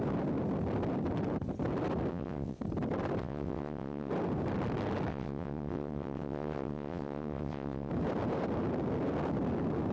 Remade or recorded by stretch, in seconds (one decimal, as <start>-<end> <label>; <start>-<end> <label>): 0.0-2.1 recorded; 2.1-2.6 remade; 2.6-3.2 recorded; 3.2-4.1 remade; 4.1-5.1 recorded; 5.1-7.9 remade; 7.9-9.9 recorded